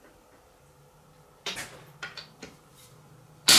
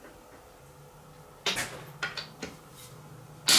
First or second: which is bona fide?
second